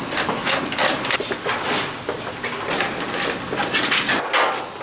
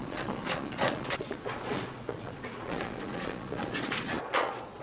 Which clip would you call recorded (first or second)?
first